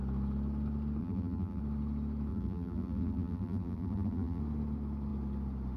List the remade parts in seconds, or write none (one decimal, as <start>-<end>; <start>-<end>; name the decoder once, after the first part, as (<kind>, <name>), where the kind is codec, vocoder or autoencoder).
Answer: 1.0-1.6 (vocoder, BigVGAN v2); 2.3-4.4